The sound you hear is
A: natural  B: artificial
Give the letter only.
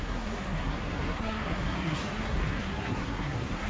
B